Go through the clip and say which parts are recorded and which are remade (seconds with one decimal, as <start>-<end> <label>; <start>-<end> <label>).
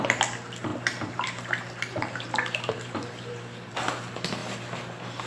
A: 0.0-0.7 recorded; 0.7-3.7 remade; 3.7-5.3 recorded